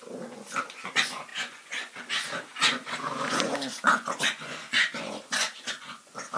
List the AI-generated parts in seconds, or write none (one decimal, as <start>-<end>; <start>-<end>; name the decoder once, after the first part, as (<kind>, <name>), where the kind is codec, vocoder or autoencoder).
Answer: 0.0-6.4 (vocoder, Vocos)